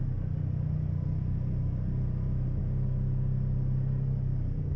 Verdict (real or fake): real